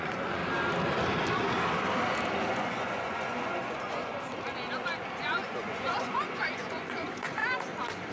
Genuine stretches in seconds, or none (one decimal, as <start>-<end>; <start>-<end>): 0.4-2.5; 4.1-5.2; 7.4-8.1